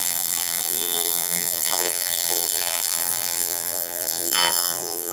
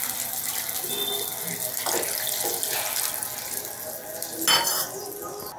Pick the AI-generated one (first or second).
first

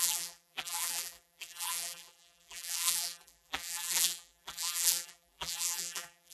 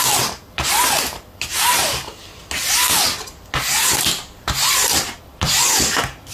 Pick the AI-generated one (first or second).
first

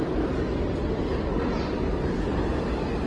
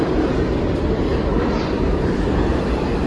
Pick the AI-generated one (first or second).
second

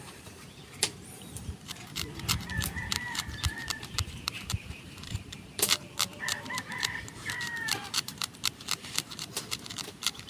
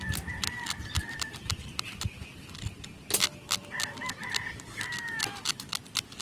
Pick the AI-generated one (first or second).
first